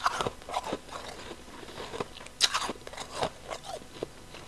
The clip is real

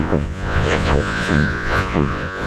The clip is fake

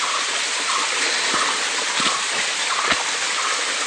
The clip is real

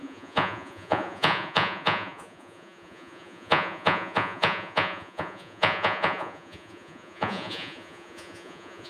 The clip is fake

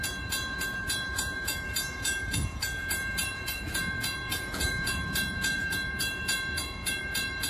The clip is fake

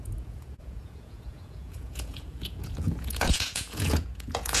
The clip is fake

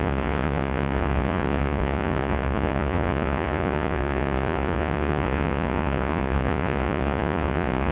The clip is fake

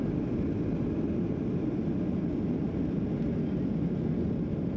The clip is real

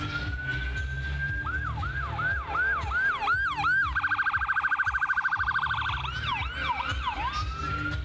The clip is real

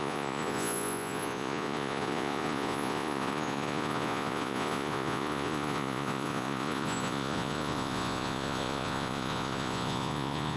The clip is fake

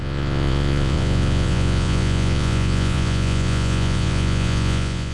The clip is fake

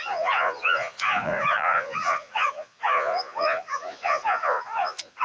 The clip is fake